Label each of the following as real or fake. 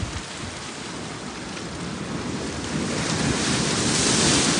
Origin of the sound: real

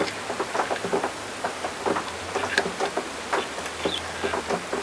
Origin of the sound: real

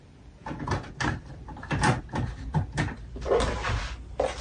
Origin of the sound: real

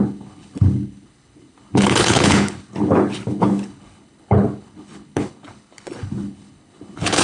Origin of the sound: fake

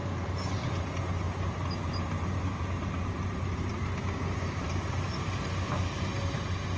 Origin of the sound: real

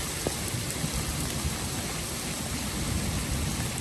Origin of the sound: real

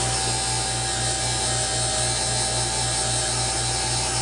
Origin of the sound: real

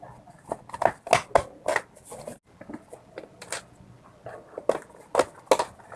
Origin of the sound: real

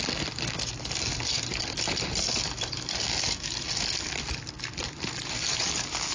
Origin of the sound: real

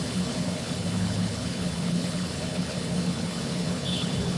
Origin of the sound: fake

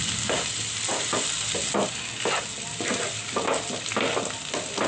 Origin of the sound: real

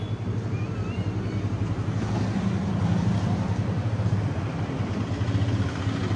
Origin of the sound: real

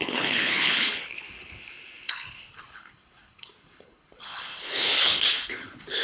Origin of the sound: fake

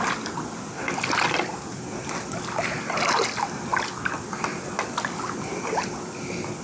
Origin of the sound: real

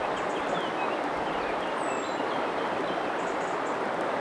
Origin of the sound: real